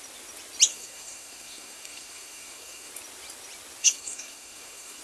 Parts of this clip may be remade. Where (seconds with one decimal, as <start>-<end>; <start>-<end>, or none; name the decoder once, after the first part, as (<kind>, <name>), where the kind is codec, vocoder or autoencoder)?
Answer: 0.7-2.9 (codec, SNAC); 3.8-5.0